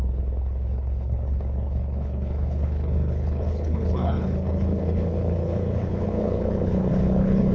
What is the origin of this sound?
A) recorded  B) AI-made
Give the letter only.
B